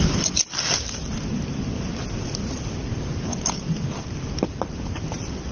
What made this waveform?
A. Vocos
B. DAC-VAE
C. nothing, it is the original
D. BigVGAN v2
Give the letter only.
C